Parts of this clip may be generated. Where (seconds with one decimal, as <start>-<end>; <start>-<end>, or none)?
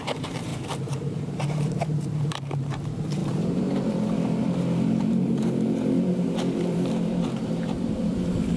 0.0-8.6